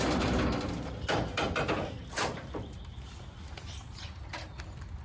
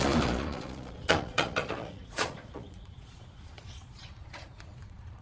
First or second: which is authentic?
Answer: first